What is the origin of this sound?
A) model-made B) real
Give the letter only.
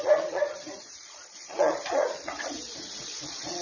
A